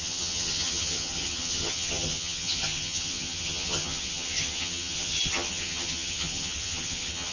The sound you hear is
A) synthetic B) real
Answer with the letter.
A